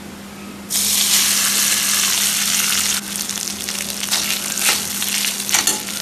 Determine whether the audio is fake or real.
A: real